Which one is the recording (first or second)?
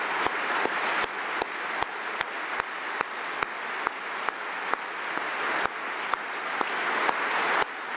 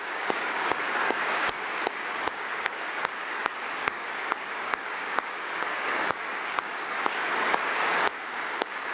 first